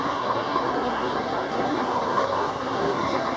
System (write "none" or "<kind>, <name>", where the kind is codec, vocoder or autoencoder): codec, SNAC